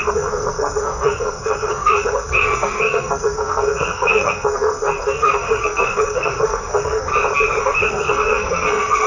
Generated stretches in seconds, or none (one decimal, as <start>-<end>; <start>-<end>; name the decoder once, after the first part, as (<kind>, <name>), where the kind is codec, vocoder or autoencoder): 0.0-7.1 (codec, SNAC); 7.6-9.1